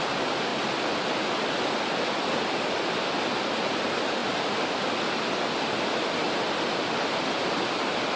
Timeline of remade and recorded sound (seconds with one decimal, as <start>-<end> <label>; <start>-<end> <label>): 0.0-0.5 remade; 0.5-3.4 recorded; 3.4-4.2 remade; 4.2-8.2 recorded